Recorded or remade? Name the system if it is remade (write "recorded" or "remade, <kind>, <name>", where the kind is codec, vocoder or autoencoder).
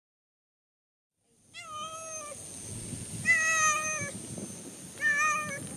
recorded